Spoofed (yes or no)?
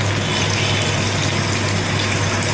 no